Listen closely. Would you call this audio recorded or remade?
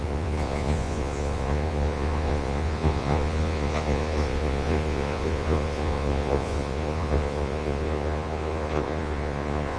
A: remade